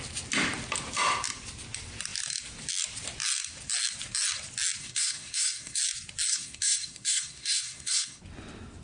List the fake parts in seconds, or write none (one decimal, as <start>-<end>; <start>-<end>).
4.8-5.8; 6.3-8.2